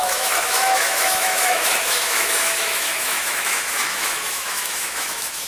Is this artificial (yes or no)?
yes